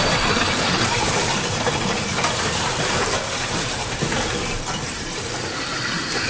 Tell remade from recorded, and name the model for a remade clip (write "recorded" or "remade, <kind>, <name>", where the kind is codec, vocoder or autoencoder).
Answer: remade, vocoder, BigVGAN v2